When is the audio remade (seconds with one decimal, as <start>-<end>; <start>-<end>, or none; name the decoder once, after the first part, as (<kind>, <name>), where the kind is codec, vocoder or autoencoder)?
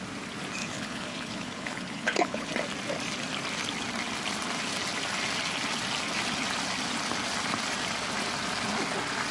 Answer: 0.6-2.5 (codec, HILCodec)